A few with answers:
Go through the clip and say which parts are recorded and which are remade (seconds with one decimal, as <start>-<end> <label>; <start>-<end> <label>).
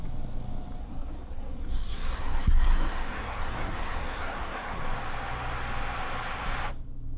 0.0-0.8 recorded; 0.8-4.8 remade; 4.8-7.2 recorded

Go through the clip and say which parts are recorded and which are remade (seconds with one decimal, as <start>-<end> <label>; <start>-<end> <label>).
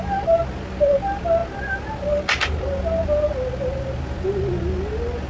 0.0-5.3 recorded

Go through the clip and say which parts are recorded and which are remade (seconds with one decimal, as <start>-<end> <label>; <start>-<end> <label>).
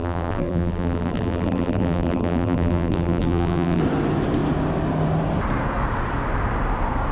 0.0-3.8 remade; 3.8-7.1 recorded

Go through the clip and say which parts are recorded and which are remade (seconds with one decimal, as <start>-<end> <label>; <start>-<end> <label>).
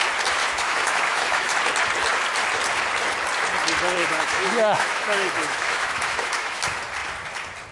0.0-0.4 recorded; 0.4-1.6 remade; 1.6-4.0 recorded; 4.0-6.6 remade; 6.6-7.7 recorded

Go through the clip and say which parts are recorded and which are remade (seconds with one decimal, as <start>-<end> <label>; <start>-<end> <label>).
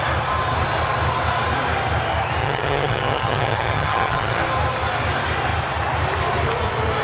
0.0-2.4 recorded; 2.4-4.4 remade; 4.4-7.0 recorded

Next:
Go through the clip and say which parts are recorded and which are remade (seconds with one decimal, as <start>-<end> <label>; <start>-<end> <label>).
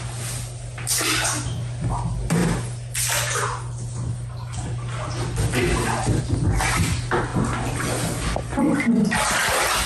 0.0-9.9 recorded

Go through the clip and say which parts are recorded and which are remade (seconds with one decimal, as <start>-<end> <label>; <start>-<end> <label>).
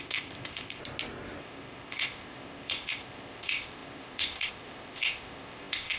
0.0-0.8 remade; 0.8-1.4 recorded; 1.4-6.0 remade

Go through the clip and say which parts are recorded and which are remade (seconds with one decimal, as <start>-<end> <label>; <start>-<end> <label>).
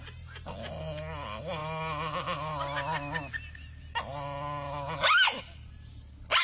0.0-6.4 recorded